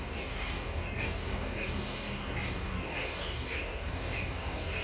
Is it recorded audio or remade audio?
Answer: remade